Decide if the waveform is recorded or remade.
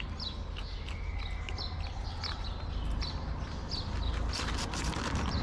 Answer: recorded